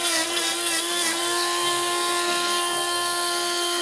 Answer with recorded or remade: remade